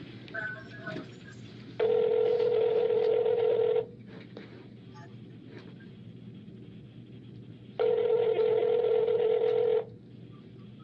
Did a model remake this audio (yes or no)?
no